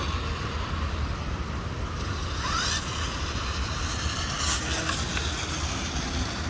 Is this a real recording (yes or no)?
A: yes